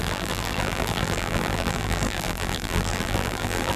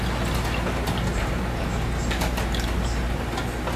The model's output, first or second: first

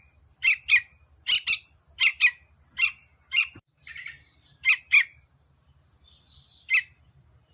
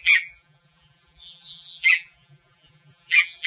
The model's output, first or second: second